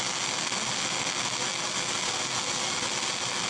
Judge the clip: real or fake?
real